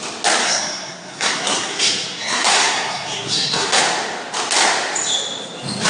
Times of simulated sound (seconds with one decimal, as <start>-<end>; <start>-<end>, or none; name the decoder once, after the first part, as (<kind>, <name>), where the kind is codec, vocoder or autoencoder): 0.4-3.8 (codec, SNAC)